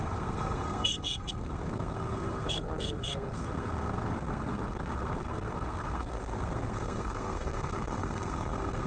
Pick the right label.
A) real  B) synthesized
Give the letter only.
B